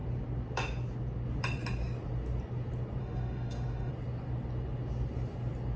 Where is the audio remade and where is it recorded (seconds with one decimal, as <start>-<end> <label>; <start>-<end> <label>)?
0.0-3.0 recorded; 3.0-3.9 remade; 3.9-5.8 recorded